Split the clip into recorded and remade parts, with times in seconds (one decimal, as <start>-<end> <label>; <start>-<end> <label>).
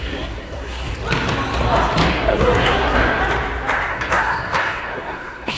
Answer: 0.0-0.9 remade; 0.9-2.1 recorded; 2.1-3.2 remade; 3.2-3.9 recorded; 3.9-5.6 remade